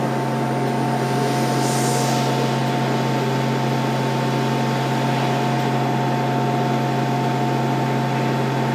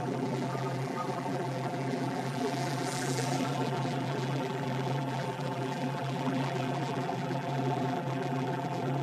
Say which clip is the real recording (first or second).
first